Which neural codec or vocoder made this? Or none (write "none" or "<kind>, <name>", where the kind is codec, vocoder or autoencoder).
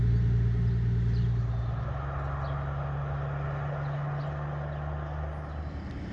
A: none